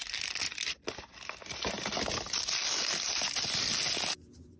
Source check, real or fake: real